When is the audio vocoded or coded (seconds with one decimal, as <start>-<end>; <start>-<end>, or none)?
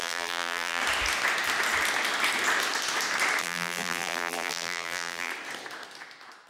0.0-0.8; 3.4-5.3